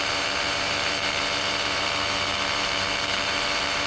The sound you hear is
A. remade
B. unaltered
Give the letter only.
A